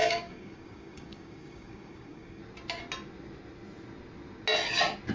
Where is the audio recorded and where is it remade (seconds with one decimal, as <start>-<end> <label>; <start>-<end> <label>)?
0.0-2.4 remade; 2.4-5.1 recorded